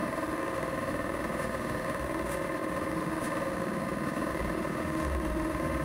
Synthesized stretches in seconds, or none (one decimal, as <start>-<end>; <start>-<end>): 0.0-5.8